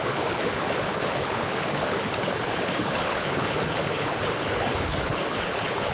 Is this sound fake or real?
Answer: fake